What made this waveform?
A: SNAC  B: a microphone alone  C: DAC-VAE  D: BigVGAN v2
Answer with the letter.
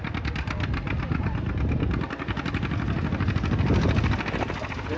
B